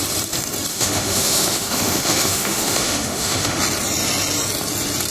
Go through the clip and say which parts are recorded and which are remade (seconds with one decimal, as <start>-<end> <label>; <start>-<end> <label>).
0.0-0.7 recorded; 0.7-3.6 remade; 3.6-5.1 recorded

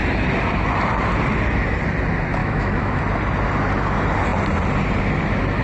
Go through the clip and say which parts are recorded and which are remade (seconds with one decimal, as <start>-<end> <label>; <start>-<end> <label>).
0.0-2.4 recorded; 2.4-3.0 remade; 3.0-5.6 recorded

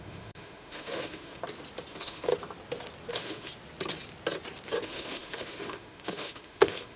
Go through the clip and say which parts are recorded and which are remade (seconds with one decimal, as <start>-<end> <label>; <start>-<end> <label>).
0.0-1.4 remade; 1.4-1.9 recorded; 1.9-2.3 remade; 2.3-3.1 recorded; 3.1-3.5 remade; 3.5-4.8 recorded; 4.8-7.0 remade